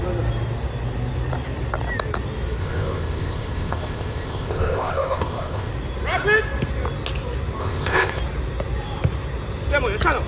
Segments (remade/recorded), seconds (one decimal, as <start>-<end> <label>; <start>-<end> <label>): 0.0-2.6 recorded; 2.6-5.7 remade; 5.7-7.6 recorded; 7.6-8.2 remade; 8.2-10.3 recorded